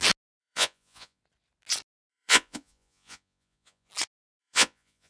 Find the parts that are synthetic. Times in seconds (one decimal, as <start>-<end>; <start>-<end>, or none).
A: 0.4-1.2; 2.1-3.9; 4.4-5.1